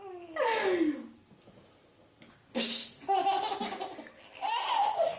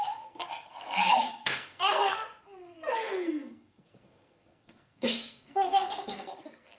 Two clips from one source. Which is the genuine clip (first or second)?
first